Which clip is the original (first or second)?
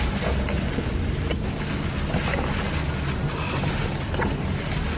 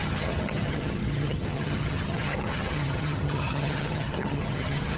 first